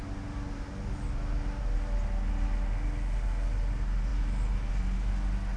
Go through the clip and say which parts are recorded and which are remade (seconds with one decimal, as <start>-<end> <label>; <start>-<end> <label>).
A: 0.0-5.6 recorded